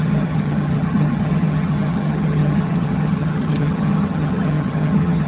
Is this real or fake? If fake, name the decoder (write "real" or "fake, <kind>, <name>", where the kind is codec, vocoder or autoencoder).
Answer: fake, vocoder, HiFi-GAN